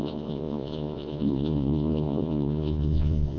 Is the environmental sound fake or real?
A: fake